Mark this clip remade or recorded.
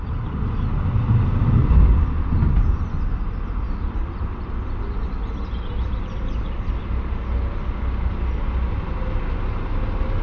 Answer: recorded